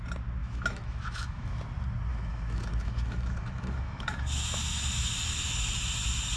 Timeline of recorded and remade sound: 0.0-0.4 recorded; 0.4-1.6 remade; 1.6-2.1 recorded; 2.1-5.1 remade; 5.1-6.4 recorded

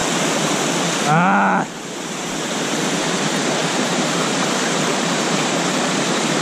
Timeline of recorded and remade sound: 0.0-1.6 recorded; 1.6-6.4 remade

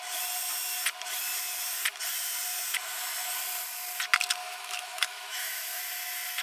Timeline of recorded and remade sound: 0.0-4.4 recorded; 4.4-5.8 remade; 5.8-6.4 recorded

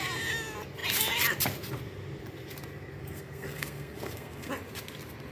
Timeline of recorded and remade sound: 0.0-3.0 recorded; 3.0-4.5 remade; 4.5-5.3 recorded

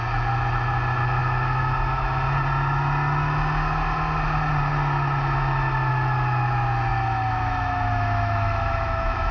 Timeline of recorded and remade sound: 0.0-6.9 recorded; 6.9-9.3 remade

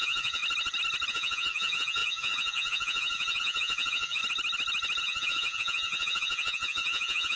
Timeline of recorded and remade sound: 0.0-0.4 remade; 0.4-1.1 recorded; 1.1-4.2 remade; 4.2-5.0 recorded; 5.0-7.4 remade

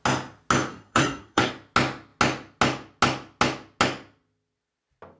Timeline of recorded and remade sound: 0.0-0.7 recorded; 0.7-1.5 remade; 1.5-5.2 recorded

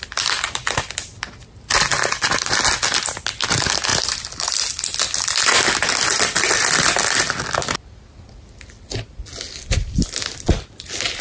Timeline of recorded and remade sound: 0.0-11.2 recorded